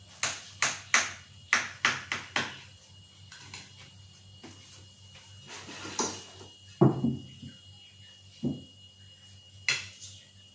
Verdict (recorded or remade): recorded